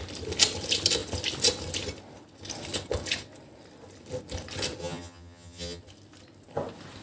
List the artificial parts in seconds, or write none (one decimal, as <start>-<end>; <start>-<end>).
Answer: 4.8-5.8